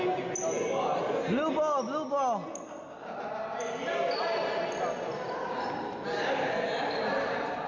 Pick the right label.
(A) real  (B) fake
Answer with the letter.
A